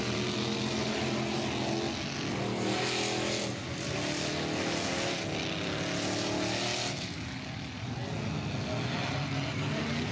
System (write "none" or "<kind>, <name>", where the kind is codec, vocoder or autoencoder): none